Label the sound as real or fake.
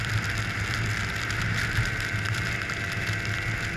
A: real